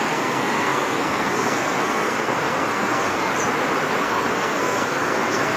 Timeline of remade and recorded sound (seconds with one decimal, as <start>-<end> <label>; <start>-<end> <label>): 0.0-3.3 remade; 3.3-4.0 recorded; 4.0-5.6 remade

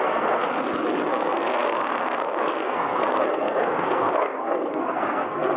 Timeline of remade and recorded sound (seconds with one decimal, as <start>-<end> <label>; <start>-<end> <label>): 0.0-0.4 remade; 0.4-1.1 recorded; 1.1-5.6 remade

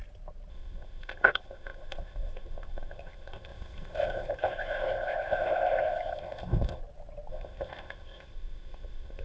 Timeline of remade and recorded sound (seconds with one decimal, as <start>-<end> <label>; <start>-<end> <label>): 0.0-0.5 recorded; 0.5-6.8 remade; 6.8-7.3 recorded; 7.3-9.2 remade